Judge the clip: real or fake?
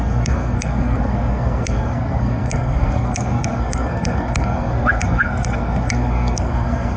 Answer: fake